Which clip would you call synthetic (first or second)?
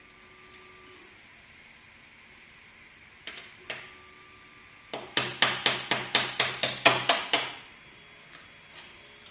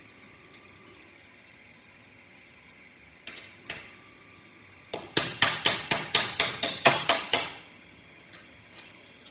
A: second